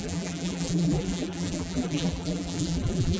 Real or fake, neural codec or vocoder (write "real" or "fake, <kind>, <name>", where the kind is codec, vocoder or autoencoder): fake, vocoder, BigVGAN v2